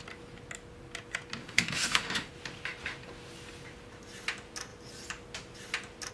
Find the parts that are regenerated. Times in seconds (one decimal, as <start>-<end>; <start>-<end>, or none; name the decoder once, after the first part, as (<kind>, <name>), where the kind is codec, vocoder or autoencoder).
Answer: 1.4-2.3 (autoencoder, DAC-VAE)